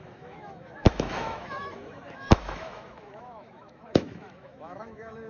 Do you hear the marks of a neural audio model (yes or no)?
yes